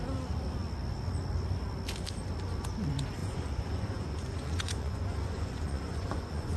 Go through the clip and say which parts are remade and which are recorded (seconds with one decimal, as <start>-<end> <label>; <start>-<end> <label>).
0.0-3.2 recorded; 3.2-6.6 remade